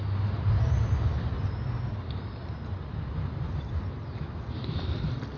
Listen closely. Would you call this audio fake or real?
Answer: real